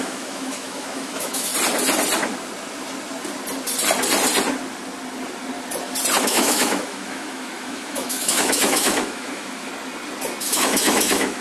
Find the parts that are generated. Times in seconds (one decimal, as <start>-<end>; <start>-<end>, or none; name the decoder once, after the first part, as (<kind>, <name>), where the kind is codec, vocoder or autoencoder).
0.0-1.5 (autoencoder, DAC-VAE); 6.2-9.7; 10.4-11.4